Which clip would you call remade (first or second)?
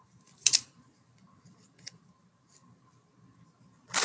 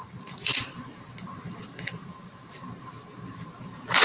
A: second